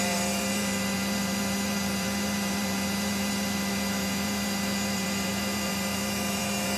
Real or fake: fake